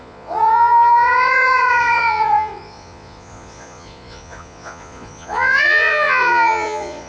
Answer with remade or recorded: remade